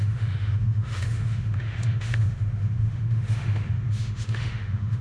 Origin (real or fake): fake